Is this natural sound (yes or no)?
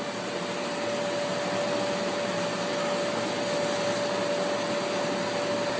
yes